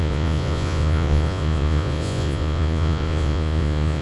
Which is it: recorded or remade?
remade